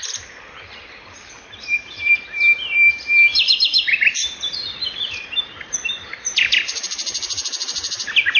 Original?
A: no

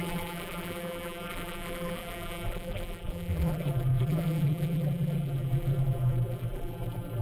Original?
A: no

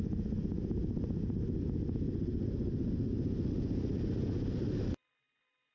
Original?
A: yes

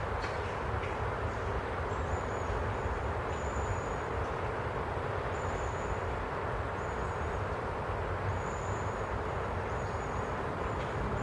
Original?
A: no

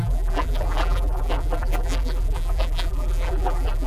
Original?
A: no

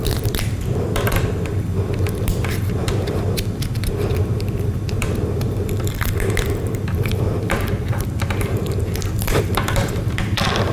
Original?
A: no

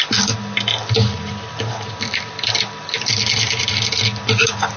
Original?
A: yes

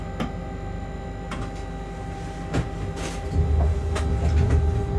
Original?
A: yes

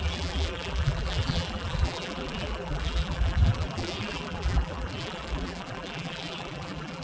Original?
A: no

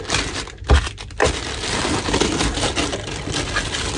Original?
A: yes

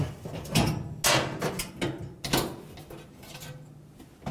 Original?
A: yes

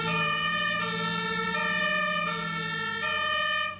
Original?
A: yes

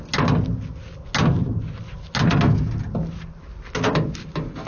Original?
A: yes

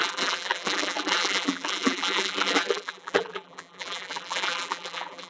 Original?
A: no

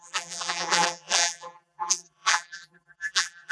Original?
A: no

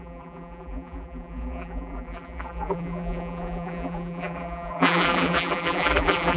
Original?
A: no